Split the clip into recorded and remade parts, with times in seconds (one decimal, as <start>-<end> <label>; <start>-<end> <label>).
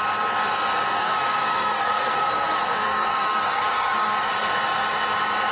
0.0-1.0 recorded; 1.0-4.3 remade; 4.3-5.5 recorded